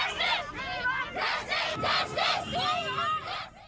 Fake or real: real